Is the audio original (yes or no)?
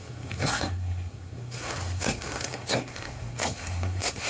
no